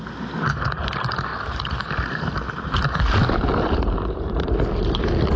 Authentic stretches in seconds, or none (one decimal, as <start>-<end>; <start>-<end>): none